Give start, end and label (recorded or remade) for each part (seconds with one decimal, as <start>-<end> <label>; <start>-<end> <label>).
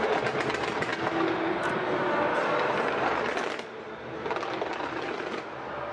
0.0-5.9 recorded